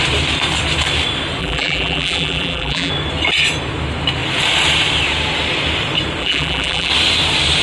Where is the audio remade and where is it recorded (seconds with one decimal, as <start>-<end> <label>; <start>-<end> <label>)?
0.0-1.4 recorded; 1.4-2.9 remade; 2.9-6.2 recorded; 6.2-6.9 remade; 6.9-7.6 recorded